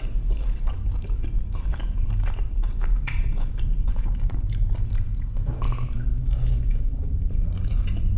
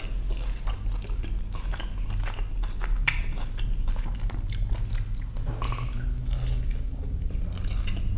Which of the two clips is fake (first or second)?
first